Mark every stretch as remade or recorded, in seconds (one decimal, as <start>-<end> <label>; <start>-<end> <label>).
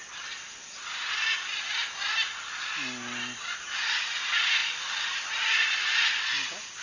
0.0-4.6 recorded; 4.6-6.8 remade